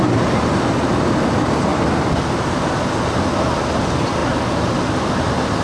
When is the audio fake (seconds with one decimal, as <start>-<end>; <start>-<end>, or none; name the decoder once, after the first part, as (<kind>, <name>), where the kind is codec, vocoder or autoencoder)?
none